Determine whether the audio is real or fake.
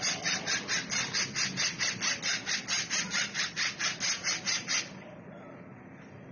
real